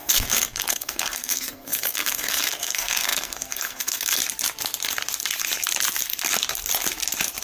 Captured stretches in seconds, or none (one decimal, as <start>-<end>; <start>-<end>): 4.2-7.4